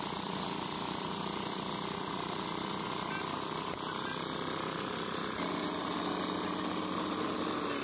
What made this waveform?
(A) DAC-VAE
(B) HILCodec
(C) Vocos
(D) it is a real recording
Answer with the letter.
D